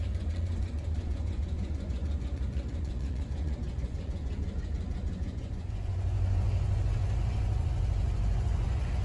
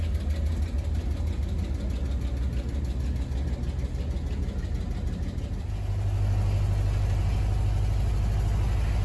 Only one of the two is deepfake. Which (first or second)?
first